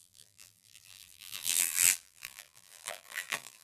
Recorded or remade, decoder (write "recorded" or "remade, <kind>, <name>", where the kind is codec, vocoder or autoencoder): remade, vocoder, BigVGAN v2